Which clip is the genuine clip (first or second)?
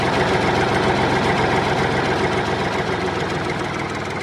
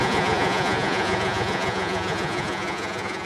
first